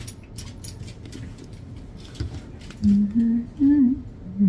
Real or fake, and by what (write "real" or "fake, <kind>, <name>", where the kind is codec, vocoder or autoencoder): real